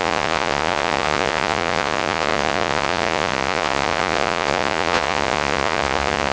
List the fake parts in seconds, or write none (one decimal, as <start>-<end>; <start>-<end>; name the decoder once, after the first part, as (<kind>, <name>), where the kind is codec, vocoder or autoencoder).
0.0-6.3 (vocoder, Vocos)